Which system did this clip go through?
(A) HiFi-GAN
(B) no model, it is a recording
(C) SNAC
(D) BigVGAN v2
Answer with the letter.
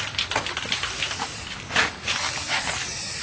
B